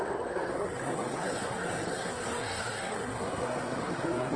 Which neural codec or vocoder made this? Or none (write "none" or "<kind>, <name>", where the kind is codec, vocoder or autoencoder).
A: codec, SNAC